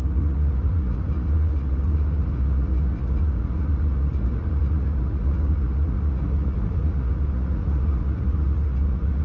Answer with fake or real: fake